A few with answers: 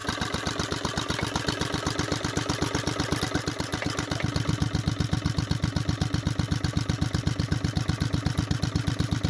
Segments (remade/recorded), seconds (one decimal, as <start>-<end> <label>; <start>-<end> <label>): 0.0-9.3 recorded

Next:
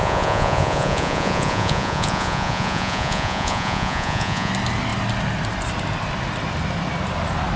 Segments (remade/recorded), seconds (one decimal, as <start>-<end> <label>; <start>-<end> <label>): 0.0-4.5 remade; 4.5-7.6 recorded

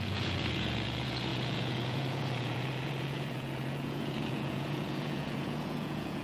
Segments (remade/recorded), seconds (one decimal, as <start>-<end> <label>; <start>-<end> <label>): 0.0-6.2 remade

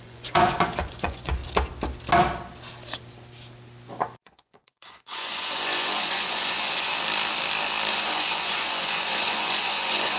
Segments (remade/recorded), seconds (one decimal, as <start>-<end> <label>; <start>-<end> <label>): 0.0-1.4 remade; 1.4-4.0 recorded; 4.0-6.9 remade; 6.9-7.9 recorded; 7.9-10.2 remade

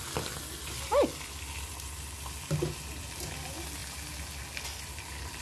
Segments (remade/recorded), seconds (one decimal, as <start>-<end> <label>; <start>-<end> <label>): 0.0-5.4 recorded

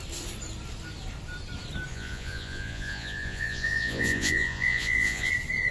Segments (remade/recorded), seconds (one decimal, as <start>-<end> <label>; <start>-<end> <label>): 0.0-1.9 recorded; 1.9-5.3 remade; 5.3-5.7 recorded

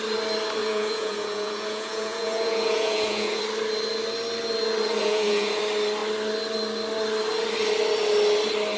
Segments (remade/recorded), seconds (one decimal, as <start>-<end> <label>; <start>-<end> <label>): 0.0-0.6 recorded; 0.6-3.4 remade; 3.4-5.0 recorded; 5.0-5.6 remade; 5.6-8.8 recorded